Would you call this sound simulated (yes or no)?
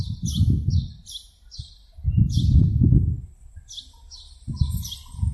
no